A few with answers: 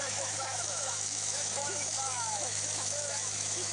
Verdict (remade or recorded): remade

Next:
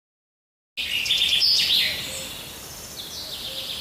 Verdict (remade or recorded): recorded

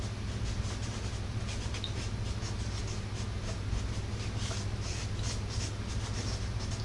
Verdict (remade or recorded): recorded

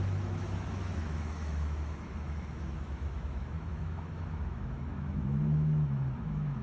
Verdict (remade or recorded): remade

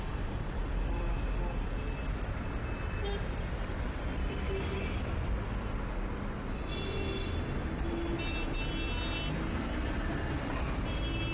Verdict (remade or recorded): recorded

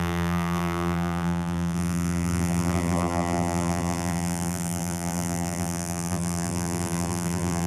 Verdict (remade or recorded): remade